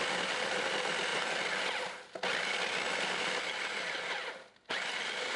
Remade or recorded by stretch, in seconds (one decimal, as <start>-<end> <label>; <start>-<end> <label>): 0.0-5.4 recorded

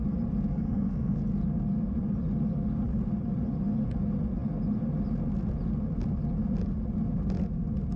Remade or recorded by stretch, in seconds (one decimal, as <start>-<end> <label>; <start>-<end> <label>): 0.0-0.5 recorded; 0.5-1.2 remade; 1.2-8.0 recorded

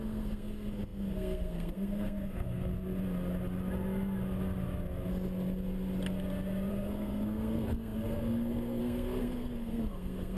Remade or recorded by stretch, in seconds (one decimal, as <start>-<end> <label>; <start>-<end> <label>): 0.0-2.7 remade; 2.7-6.7 recorded; 6.7-10.4 remade

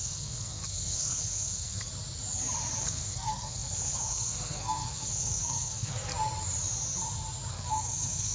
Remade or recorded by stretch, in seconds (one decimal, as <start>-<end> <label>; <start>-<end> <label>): 0.0-1.9 remade; 1.9-2.8 recorded; 2.8-6.1 remade; 6.1-7.5 recorded; 7.5-8.3 remade